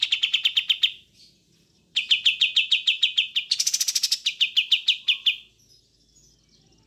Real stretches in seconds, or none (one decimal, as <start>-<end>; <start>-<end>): 0.0-6.9